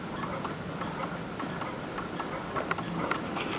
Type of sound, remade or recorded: recorded